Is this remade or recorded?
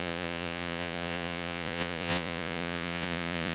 remade